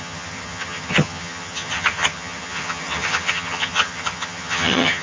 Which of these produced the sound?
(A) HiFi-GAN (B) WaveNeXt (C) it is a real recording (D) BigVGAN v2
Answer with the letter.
A